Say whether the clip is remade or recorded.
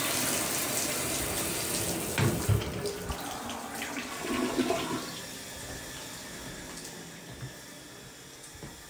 recorded